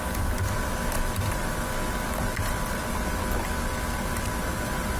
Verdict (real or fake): real